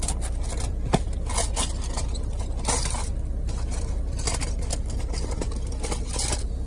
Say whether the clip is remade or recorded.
recorded